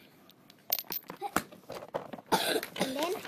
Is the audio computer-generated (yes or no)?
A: no